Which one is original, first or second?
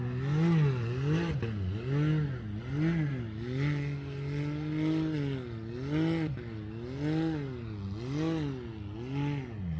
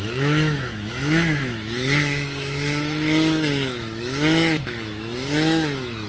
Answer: first